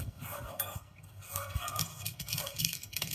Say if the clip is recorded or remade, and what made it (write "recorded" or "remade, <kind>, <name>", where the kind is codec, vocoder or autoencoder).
remade, codec, SNAC